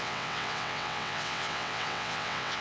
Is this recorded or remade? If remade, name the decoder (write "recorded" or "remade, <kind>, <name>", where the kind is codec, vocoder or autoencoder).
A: remade, vocoder, WaveNeXt